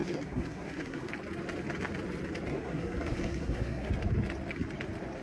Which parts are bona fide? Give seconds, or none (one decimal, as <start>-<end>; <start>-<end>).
1.1-2.5; 3.9-5.2